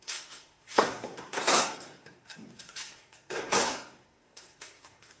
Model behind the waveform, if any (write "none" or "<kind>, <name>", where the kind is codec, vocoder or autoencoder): codec, SNAC